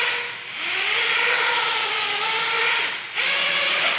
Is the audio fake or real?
real